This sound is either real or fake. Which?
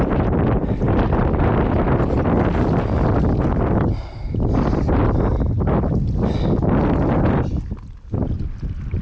real